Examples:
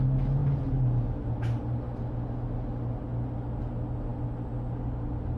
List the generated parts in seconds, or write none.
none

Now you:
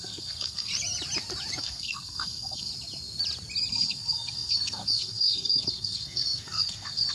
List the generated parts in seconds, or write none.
0.0-0.7 (codec, SNAC); 1.6-2.7; 3.7-7.1